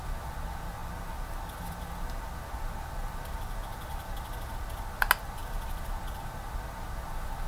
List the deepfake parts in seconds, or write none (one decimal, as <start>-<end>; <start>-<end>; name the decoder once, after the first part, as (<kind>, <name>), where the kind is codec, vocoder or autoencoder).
none